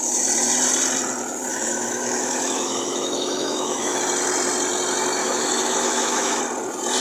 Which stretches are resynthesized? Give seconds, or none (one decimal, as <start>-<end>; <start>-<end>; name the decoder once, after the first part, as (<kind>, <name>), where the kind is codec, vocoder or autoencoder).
1.5-4.0 (autoencoder, DAC-VAE); 5.2-6.4